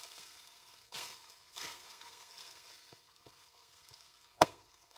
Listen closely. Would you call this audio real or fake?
fake